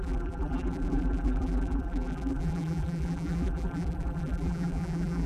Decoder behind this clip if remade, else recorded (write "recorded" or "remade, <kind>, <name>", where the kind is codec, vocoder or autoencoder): remade, vocoder, BigVGAN v2